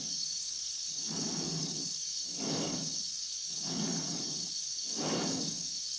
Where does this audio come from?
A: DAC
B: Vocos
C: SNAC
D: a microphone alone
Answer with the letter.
A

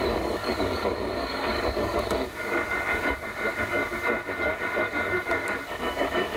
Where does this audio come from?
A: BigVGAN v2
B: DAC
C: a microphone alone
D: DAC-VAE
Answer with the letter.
B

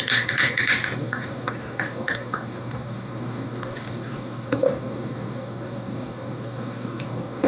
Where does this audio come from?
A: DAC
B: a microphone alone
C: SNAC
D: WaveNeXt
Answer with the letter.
A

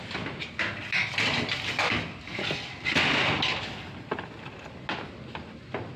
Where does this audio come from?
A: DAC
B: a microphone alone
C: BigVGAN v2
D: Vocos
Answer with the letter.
B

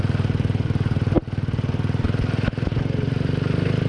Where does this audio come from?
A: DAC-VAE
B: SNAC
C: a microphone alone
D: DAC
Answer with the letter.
C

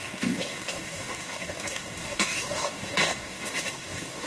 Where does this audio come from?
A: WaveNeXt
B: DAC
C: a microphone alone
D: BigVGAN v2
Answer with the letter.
B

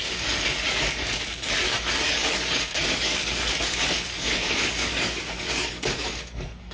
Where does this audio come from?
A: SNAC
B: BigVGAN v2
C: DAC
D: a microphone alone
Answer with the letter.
C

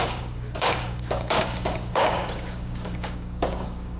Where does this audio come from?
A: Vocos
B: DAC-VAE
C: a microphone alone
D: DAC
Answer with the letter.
D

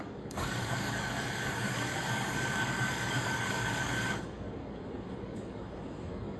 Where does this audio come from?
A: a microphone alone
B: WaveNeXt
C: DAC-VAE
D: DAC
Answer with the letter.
D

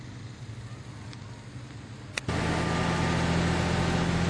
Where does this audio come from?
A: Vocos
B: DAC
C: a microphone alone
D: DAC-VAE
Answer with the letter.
C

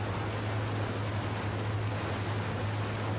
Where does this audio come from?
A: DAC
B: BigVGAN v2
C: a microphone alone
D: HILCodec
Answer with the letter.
C